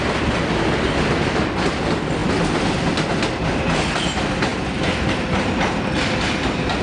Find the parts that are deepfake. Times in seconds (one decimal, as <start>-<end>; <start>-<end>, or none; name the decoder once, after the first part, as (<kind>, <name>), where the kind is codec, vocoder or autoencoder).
none